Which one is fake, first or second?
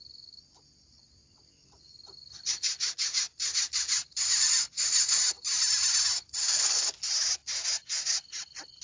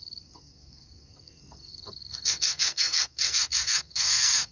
second